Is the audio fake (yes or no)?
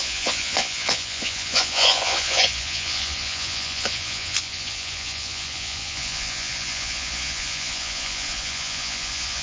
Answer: yes